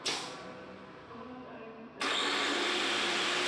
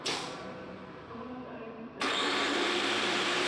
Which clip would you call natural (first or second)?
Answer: first